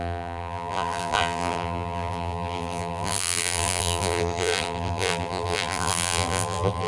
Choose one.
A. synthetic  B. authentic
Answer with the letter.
A